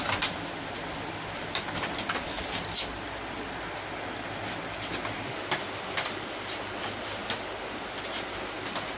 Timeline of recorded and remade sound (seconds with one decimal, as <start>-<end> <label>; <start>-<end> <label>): 0.0-9.0 recorded